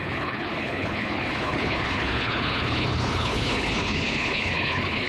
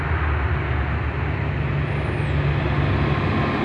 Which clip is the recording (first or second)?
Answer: second